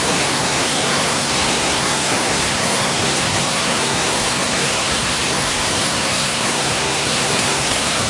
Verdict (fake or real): fake